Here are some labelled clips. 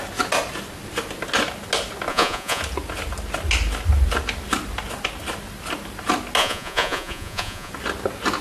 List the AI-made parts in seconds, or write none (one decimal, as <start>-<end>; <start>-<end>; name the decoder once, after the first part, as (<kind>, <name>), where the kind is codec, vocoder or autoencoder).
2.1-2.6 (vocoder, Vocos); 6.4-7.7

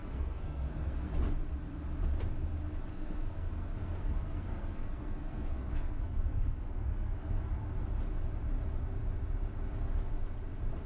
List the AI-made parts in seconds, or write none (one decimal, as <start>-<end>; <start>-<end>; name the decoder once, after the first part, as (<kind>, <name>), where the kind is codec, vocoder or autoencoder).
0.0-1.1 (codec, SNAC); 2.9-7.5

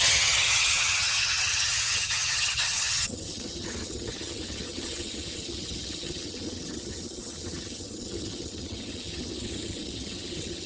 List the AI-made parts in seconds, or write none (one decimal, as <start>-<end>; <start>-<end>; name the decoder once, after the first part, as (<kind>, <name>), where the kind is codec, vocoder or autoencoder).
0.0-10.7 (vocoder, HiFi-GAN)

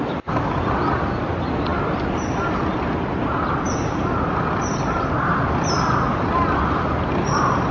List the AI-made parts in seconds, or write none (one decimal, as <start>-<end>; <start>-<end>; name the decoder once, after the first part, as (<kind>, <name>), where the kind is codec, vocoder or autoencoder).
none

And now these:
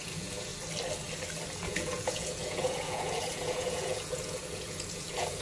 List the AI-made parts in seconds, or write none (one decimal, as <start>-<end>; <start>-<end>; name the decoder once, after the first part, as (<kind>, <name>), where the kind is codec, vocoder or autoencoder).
0.0-0.5 (vocoder, Vocos); 1.6-5.4

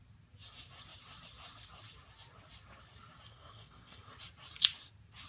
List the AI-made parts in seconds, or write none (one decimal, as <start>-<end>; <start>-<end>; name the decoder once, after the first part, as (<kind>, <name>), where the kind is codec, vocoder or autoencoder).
3.3-4.1 (codec, SNAC)